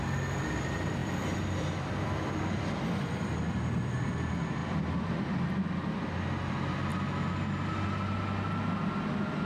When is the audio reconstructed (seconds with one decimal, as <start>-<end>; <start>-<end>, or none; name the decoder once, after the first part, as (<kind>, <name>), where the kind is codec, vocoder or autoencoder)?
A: 1.0-4.1 (vocoder, BigVGAN v2); 4.6-5.1